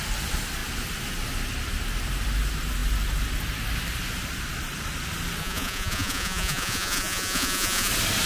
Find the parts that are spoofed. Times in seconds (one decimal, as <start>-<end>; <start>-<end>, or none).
5.4-7.9